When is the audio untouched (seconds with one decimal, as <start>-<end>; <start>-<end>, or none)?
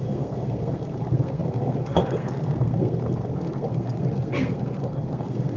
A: none